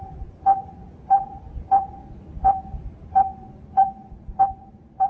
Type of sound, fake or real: real